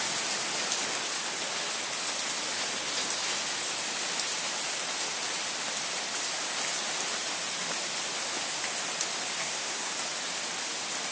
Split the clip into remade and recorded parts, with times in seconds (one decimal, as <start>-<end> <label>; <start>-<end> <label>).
0.0-9.4 recorded; 9.4-9.9 remade; 9.9-11.1 recorded